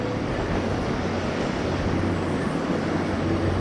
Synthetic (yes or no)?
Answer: no